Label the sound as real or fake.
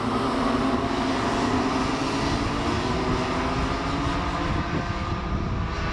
real